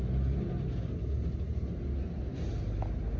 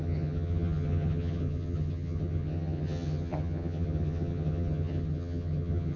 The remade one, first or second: second